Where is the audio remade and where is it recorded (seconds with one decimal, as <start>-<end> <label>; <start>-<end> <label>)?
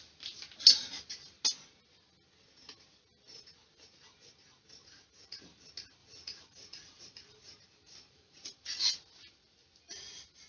0.0-4.8 recorded; 4.8-5.6 remade; 5.6-6.0 recorded; 6.0-8.7 remade; 8.7-10.5 recorded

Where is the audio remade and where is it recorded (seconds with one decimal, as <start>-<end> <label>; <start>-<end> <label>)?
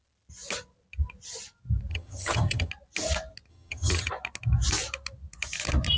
0.0-1.9 recorded; 1.9-2.7 remade; 2.7-3.5 recorded; 3.5-4.1 remade; 4.1-6.0 recorded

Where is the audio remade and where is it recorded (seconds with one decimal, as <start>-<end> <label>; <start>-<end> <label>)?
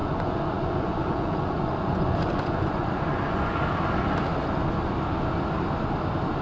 0.0-3.6 remade; 3.6-6.4 recorded